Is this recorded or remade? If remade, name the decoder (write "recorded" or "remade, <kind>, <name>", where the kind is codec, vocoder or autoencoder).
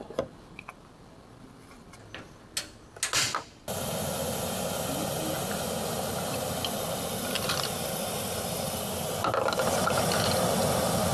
recorded